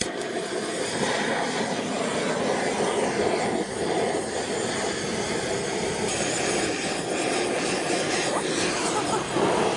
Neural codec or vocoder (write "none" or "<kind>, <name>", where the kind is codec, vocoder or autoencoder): none